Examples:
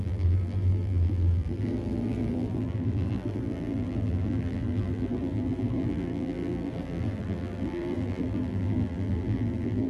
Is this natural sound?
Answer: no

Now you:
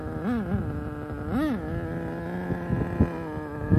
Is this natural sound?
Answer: yes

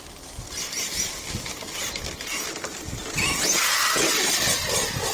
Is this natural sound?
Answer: yes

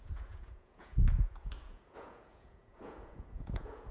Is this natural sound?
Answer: no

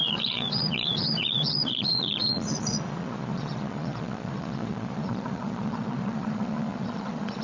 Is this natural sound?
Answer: no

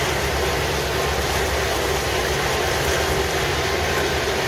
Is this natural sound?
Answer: yes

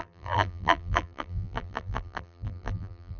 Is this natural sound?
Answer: no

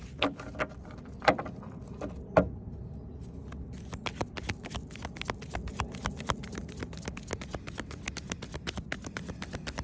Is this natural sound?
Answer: yes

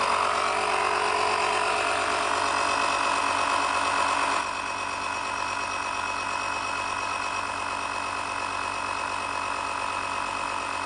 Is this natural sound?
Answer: yes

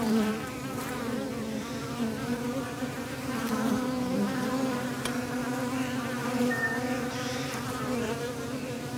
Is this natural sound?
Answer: no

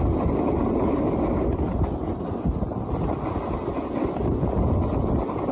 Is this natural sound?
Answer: yes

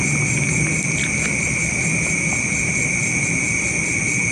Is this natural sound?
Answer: yes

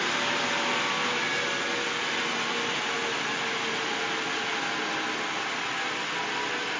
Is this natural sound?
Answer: yes